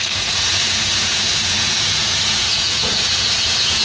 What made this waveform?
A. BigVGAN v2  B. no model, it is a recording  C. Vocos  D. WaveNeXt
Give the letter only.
C